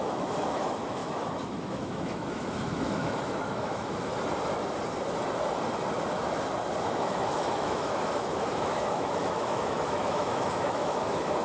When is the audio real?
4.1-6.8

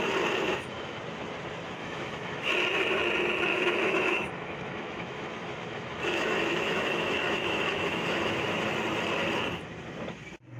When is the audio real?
0.0-0.5; 1.0-1.8; 2.5-3.5; 8.6-10.6

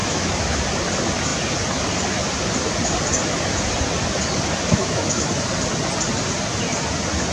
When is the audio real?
0.6-4.7; 5.3-7.3

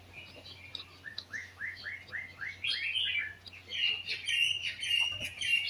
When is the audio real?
0.0-1.1; 1.8-5.7

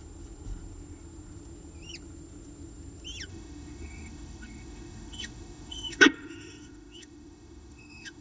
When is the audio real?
0.0-3.3

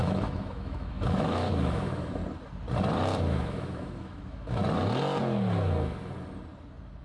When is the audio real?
2.2-3.2; 4.6-7.0